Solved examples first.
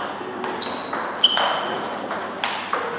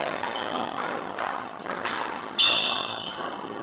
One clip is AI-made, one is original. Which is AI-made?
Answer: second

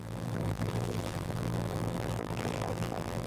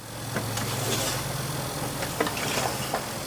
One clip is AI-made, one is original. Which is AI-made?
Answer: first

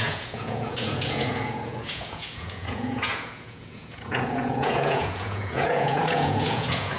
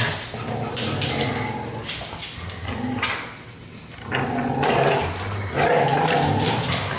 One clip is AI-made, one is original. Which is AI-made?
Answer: first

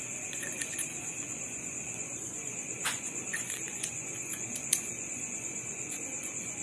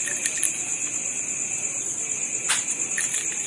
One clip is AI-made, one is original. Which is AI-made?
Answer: first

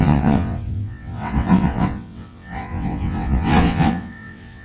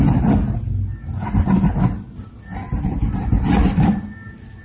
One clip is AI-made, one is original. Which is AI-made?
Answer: first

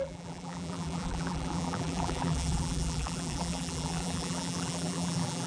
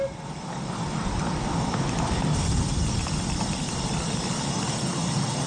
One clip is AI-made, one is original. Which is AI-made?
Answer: first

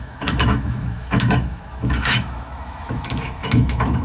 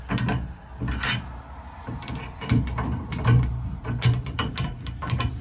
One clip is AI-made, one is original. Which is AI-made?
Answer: first